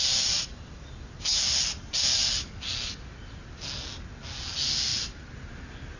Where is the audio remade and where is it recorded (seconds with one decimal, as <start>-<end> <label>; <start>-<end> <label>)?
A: 0.0-6.0 recorded